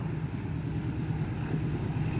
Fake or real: real